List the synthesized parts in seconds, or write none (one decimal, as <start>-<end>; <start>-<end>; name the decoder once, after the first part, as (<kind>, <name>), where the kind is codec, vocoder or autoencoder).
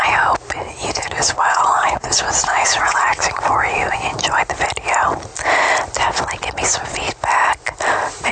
0.8-3.2 (vocoder, WaveNeXt)